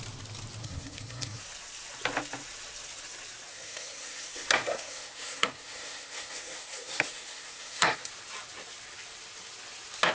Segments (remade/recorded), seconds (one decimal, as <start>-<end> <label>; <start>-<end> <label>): 0.0-0.6 recorded; 0.6-1.4 remade; 1.4-3.5 recorded; 3.5-8.1 remade; 8.1-10.1 recorded